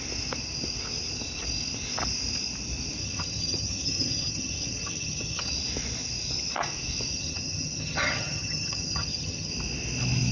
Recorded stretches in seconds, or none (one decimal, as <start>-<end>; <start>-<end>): 0.0-3.0; 5.5-7.1; 9.5-10.3